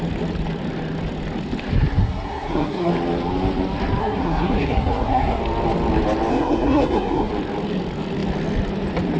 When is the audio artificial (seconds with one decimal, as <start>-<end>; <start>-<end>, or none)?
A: 2.0-2.9; 4.0-5.4; 6.3-7.3